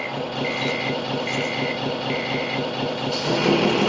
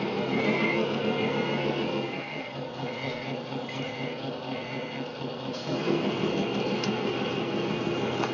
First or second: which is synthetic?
second